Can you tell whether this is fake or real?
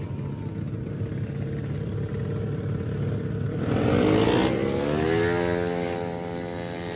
real